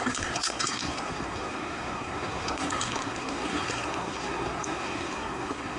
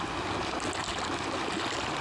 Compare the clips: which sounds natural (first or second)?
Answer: second